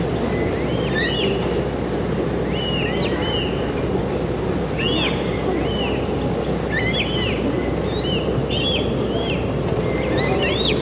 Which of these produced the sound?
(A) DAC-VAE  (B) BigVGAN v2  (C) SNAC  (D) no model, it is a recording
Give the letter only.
D